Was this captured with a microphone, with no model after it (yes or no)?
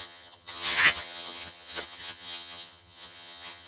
no